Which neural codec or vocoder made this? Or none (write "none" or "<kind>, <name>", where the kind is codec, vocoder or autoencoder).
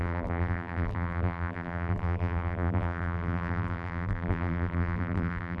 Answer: vocoder, BigVGAN v2